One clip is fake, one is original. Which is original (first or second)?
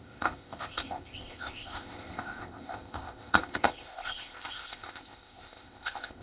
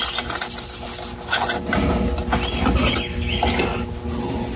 second